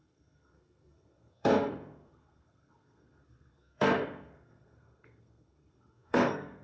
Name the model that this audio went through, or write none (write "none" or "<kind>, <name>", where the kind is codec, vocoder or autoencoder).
codec, SNAC